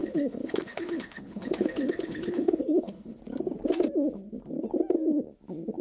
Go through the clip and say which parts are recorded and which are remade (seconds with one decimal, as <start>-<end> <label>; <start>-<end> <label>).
0.0-3.2 remade; 3.2-5.8 recorded